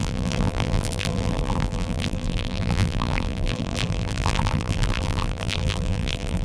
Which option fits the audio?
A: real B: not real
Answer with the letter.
B